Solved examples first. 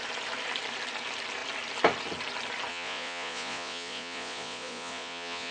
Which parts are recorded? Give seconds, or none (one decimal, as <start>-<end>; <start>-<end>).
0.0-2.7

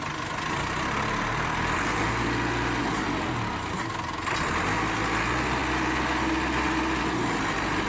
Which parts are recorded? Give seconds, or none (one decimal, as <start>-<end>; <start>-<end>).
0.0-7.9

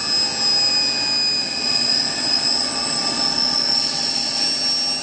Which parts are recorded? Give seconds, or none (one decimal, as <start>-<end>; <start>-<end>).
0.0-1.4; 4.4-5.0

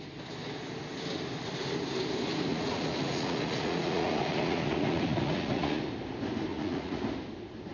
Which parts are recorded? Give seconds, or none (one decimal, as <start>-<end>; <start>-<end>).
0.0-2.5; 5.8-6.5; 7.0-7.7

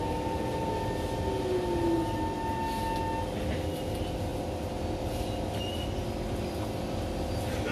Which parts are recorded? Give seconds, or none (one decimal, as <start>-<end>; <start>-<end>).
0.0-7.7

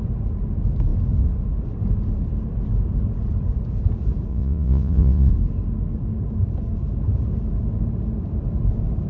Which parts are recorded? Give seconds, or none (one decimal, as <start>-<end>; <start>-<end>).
0.0-4.3; 5.3-9.1

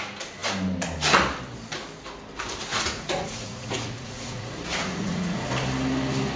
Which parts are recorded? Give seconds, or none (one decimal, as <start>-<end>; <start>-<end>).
0.0-2.7; 5.5-6.4